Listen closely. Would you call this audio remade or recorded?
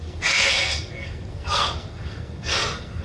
remade